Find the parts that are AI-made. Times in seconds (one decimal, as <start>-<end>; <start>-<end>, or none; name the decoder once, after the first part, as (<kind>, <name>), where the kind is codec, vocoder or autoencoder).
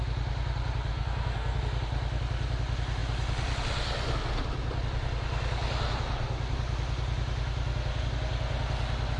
0.9-1.6 (codec, SNAC)